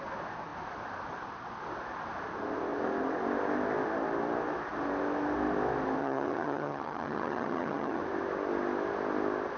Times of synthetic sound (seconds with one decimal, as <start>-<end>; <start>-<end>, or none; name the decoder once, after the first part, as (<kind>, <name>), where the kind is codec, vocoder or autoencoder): 6.0-8.0 (vocoder, HiFi-GAN)